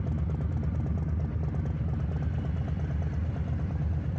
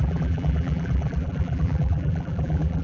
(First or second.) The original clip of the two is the first